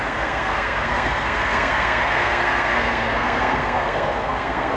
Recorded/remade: remade